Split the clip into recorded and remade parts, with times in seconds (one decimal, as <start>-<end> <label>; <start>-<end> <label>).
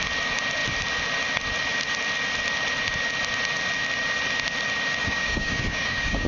0.0-5.0 recorded; 5.0-6.3 remade